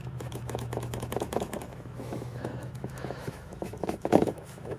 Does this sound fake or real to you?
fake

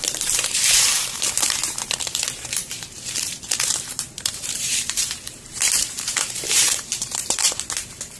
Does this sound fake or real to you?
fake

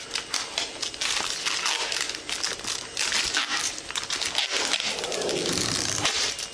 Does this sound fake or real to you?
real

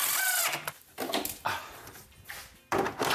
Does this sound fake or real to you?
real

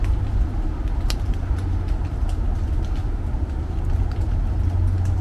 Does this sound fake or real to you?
real